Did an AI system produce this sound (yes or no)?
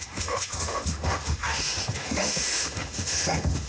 yes